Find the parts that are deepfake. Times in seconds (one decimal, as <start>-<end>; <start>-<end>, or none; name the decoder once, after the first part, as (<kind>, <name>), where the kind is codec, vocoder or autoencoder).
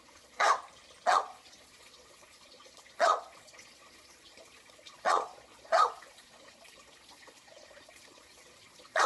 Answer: 0.0-0.4 (vocoder, Vocos); 1.1-9.1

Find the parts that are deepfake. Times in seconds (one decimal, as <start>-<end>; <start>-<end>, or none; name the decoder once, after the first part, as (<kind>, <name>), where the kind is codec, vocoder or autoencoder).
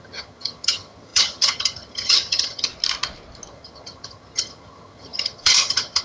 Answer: 0.0-2.7 (vocoder, HiFi-GAN); 3.5-6.0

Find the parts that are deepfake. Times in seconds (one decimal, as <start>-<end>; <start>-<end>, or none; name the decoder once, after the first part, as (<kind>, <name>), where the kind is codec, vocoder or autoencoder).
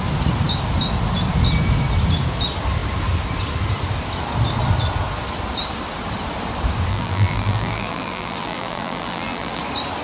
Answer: 6.9-9.6 (vocoder, BigVGAN v2)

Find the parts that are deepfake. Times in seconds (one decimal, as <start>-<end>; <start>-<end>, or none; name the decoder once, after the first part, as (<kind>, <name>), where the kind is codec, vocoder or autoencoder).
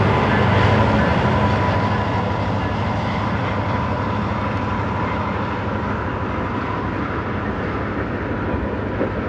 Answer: none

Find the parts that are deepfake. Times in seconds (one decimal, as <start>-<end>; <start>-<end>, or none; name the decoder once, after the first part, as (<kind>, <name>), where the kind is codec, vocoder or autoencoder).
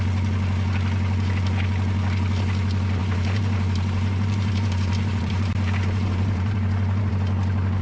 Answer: 3.0-7.1 (vocoder, BigVGAN v2)